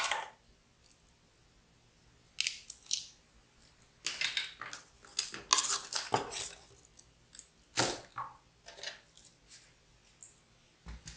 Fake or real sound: real